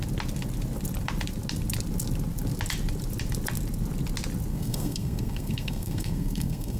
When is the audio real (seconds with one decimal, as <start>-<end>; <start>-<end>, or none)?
0.0-4.5